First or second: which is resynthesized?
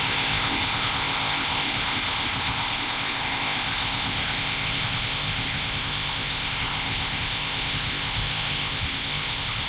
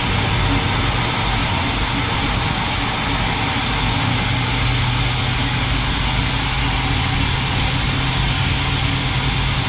first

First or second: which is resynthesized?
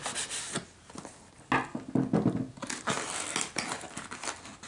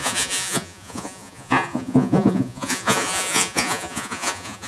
second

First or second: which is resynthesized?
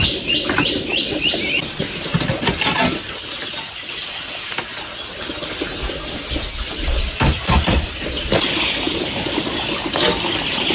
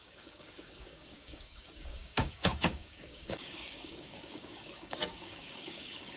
second